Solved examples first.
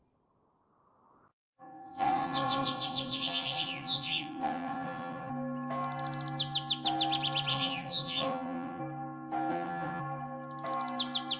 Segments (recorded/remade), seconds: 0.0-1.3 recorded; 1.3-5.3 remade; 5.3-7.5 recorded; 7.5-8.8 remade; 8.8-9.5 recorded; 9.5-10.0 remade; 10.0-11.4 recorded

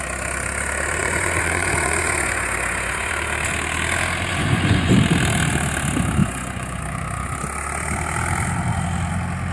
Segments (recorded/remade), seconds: 0.0-1.0 recorded; 1.0-3.1 remade; 3.1-4.3 recorded; 4.3-4.9 remade; 4.9-6.2 recorded; 6.2-6.8 remade; 6.8-9.5 recorded

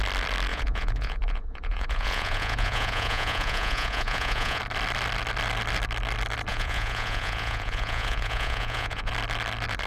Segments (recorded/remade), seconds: 0.0-0.5 recorded; 0.5-4.6 remade; 4.6-6.5 recorded; 6.5-9.1 remade; 9.1-9.9 recorded

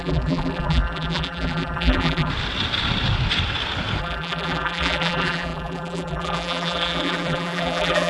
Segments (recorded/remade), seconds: 0.0-2.3 remade; 2.3-4.0 recorded; 4.0-8.1 remade

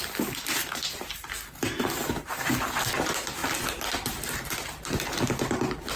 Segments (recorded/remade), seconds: 0.0-6.0 recorded